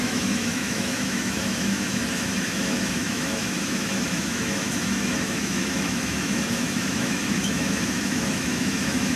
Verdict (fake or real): fake